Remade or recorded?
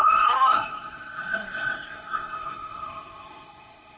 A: remade